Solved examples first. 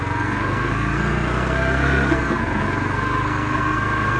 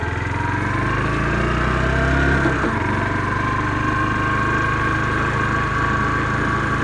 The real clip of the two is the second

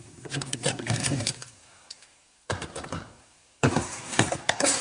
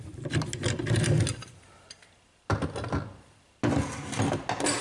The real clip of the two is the second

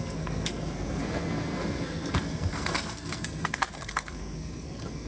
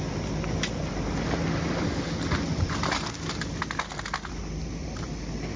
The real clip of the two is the second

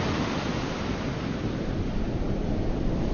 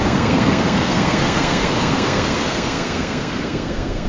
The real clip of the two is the first